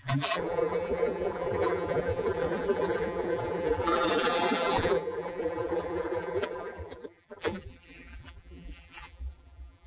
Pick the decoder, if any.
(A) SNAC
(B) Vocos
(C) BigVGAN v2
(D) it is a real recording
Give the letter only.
C